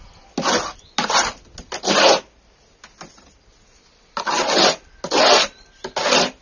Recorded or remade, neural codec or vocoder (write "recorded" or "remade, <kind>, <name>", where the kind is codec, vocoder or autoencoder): recorded